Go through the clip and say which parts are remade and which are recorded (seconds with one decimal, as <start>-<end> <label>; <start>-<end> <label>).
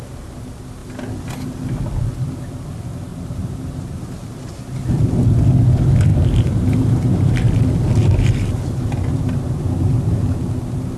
0.0-3.1 recorded; 3.1-4.0 remade; 4.0-6.1 recorded; 6.1-7.6 remade; 7.6-8.0 recorded; 8.0-10.4 remade; 10.4-11.0 recorded